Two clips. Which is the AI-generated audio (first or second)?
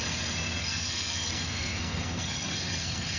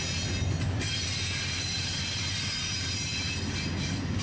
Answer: first